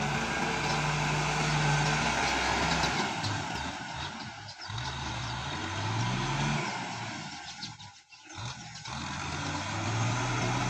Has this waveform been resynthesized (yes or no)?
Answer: no